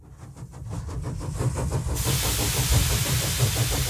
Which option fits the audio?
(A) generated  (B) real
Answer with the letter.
B